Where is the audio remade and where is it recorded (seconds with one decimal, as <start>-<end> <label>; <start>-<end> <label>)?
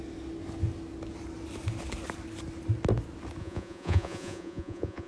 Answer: 0.0-3.4 recorded; 3.4-5.1 remade